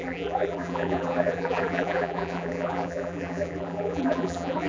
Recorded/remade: remade